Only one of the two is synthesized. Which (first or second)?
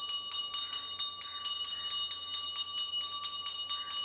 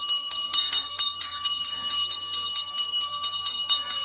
second